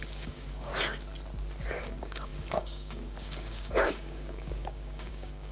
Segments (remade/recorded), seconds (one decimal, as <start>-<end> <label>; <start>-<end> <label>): 0.0-0.7 remade; 0.7-1.8 recorded; 1.8-5.5 remade